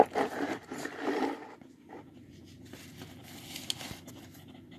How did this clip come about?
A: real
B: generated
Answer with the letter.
A